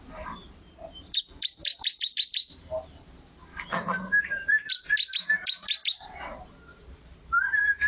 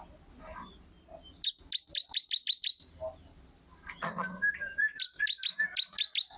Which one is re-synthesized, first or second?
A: first